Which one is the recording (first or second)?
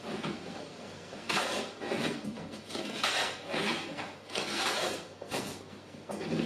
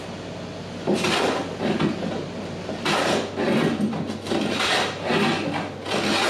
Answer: second